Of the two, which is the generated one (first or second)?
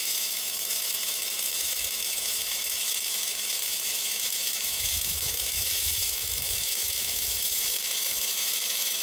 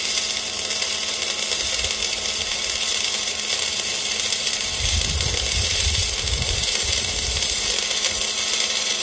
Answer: first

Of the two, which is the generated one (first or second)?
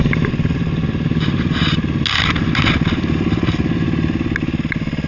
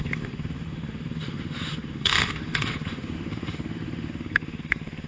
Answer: second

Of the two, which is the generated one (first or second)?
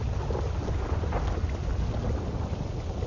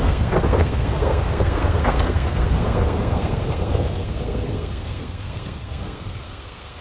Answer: second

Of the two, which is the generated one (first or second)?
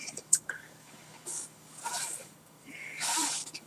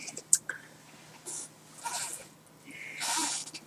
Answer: first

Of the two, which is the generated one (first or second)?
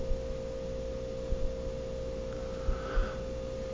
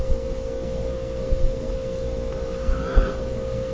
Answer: second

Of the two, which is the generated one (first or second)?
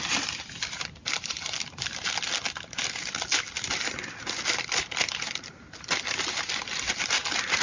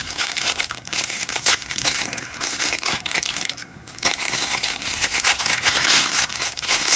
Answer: second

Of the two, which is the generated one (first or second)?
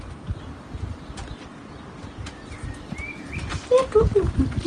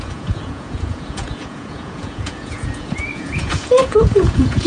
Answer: second